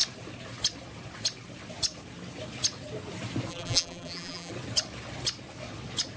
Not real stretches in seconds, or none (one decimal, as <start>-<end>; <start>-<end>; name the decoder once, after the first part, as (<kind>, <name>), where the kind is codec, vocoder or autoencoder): 3.5-4.5 (vocoder, BigVGAN v2)